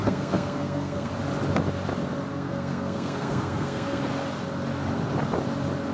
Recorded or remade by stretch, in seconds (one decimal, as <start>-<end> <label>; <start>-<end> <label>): 0.0-1.1 remade; 1.1-2.3 recorded; 2.3-4.0 remade; 4.0-5.9 recorded